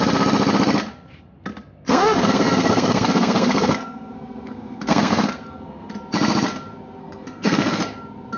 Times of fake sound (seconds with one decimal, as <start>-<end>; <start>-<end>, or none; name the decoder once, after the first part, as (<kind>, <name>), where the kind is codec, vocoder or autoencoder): 1.9-5.9 (codec, SNAC); 7.0-7.8